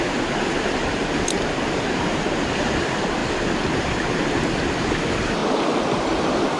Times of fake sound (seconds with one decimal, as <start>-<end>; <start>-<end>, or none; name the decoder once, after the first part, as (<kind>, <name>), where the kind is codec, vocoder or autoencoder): 0.0-3.2 (vocoder, BigVGAN v2); 3.7-5.4